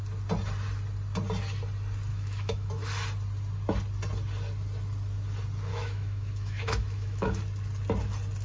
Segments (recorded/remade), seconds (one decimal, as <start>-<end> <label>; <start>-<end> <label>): 0.0-2.1 recorded; 2.1-2.7 remade; 2.7-5.7 recorded; 5.7-7.4 remade; 7.4-8.4 recorded